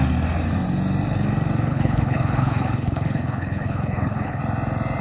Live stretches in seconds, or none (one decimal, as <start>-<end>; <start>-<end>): 0.0-1.7; 4.4-5.0